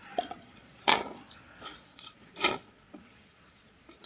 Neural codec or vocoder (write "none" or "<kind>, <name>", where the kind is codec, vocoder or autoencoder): vocoder, Vocos